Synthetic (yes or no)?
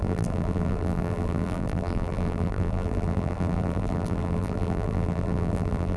yes